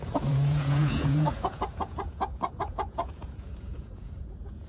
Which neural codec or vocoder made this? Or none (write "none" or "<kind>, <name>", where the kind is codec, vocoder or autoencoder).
vocoder, Vocos